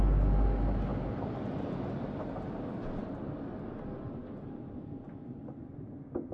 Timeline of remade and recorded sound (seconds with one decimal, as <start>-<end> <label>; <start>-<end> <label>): 0.0-6.3 recorded